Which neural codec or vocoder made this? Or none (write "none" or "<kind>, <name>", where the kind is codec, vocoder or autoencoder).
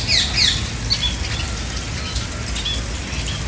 none